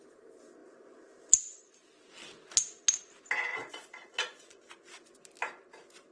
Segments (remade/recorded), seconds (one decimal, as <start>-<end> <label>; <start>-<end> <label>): 0.0-3.5 recorded; 3.5-4.7 remade; 4.7-6.1 recorded